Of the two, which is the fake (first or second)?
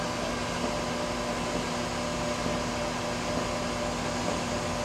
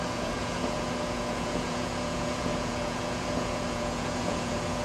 second